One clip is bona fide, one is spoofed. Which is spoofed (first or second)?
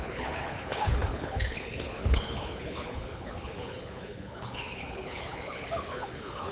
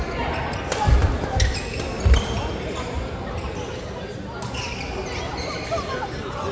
first